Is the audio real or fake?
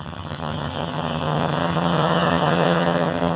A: fake